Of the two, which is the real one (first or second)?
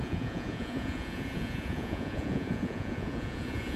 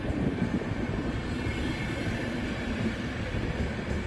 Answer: second